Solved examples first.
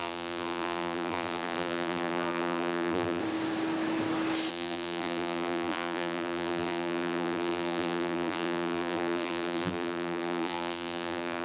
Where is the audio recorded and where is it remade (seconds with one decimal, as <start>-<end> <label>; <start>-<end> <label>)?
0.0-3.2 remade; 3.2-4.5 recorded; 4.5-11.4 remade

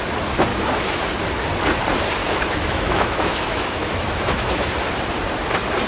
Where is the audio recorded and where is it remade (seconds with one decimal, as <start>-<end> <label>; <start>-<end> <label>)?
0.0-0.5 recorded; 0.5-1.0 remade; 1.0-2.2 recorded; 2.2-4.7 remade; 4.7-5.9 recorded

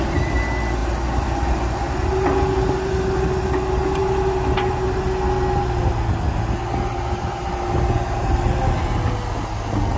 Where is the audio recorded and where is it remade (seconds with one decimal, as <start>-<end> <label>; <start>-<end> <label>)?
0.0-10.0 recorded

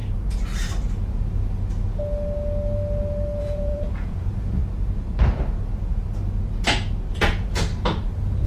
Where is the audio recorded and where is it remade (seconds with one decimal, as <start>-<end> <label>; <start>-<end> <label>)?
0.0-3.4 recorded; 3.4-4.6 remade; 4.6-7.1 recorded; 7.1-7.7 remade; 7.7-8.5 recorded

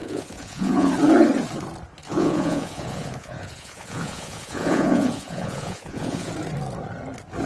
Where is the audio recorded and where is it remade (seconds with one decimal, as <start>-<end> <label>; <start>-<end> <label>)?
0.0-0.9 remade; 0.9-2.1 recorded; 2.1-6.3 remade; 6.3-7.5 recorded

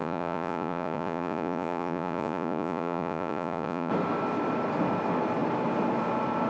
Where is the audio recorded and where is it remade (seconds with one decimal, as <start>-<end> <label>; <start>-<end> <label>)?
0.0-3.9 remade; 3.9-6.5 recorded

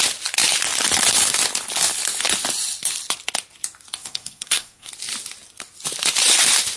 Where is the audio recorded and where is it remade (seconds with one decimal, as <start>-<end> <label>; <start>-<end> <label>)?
0.0-4.0 recorded; 4.0-4.9 remade; 4.9-6.8 recorded

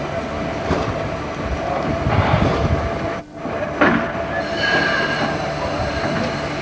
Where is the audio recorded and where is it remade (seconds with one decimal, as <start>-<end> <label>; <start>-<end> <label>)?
0.0-6.6 recorded